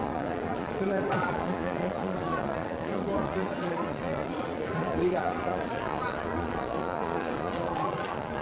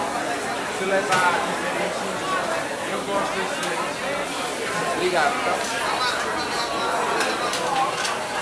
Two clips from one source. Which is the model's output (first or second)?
first